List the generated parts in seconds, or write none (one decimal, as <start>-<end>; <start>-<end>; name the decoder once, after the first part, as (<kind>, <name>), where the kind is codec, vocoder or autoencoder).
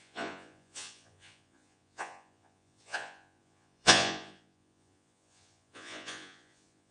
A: 0.0-6.9 (vocoder, Vocos)